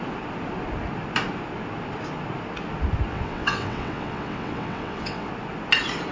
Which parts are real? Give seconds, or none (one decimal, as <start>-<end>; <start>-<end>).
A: 0.0-3.1; 5.3-6.1